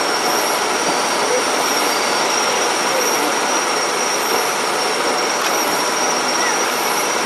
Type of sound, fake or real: fake